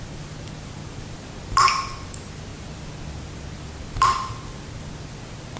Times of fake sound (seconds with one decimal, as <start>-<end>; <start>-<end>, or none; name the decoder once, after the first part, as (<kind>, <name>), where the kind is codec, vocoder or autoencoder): none